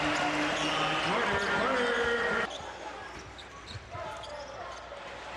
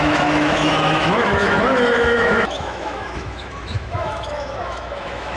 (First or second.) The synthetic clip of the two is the second